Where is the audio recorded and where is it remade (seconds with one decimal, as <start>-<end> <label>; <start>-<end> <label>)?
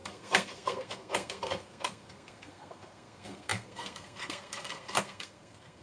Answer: 0.0-5.8 remade